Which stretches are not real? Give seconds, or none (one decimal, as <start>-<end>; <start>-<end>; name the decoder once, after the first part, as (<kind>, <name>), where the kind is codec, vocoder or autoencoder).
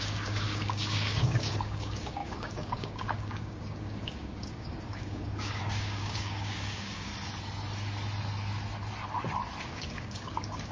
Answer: 0.0-7.1 (codec, DAC); 9.6-10.7